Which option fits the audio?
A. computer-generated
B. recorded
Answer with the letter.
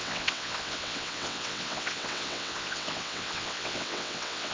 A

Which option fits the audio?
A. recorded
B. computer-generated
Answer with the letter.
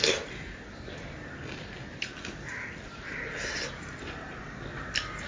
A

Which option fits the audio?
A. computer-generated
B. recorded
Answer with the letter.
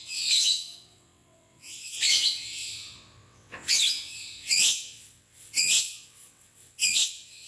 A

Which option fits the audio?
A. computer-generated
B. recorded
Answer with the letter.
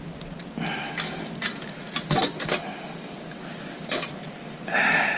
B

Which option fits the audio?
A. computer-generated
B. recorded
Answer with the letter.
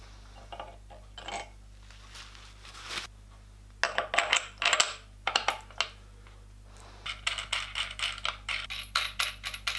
B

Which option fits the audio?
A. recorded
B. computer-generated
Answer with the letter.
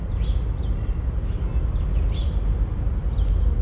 A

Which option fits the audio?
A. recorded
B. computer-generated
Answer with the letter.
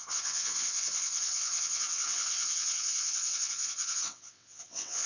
B